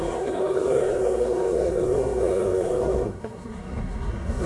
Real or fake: fake